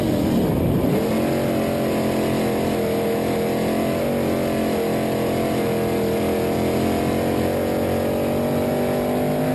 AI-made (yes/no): no